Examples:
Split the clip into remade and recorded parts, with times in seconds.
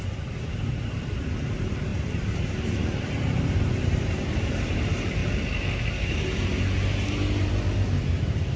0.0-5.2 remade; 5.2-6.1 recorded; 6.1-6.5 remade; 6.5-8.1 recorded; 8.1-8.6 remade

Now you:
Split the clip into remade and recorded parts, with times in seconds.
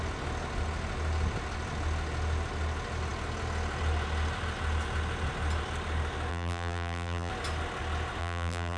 0.0-6.3 recorded; 6.3-7.3 remade; 7.3-8.2 recorded; 8.2-8.8 remade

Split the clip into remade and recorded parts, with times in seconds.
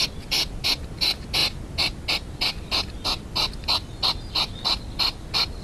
0.0-5.6 recorded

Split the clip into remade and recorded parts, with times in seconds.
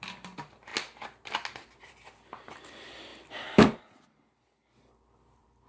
0.0-0.7 remade; 0.7-1.8 recorded; 1.8-5.7 remade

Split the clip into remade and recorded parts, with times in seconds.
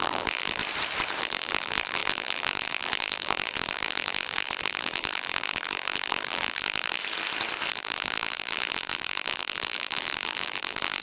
0.0-0.6 remade; 0.6-1.2 recorded; 1.2-7.0 remade; 7.0-7.7 recorded; 7.7-11.0 remade